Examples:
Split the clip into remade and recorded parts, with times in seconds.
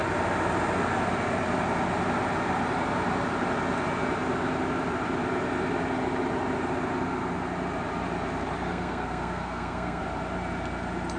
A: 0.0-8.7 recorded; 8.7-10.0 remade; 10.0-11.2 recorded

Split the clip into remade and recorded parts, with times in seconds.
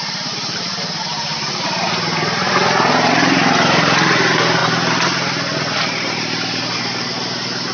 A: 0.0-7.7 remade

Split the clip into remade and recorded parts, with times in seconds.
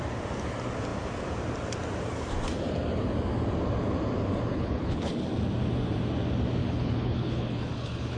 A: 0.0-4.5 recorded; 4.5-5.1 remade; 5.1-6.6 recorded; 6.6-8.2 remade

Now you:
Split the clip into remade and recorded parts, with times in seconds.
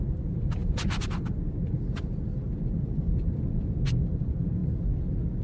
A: 0.0-0.6 recorded; 0.6-1.8 remade; 1.8-5.4 recorded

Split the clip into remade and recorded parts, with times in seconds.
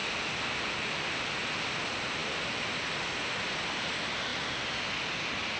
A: 0.0-5.6 recorded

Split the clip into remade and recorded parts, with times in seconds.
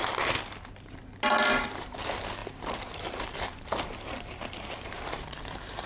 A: 0.0-1.6 recorded; 1.6-5.9 remade